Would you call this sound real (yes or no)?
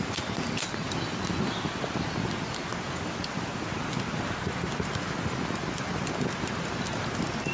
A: yes